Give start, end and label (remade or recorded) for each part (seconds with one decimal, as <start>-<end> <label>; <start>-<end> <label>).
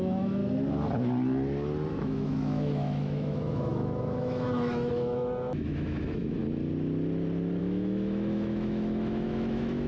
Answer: 0.0-0.4 remade; 0.4-1.9 recorded; 1.9-6.4 remade; 6.4-7.6 recorded; 7.6-9.9 remade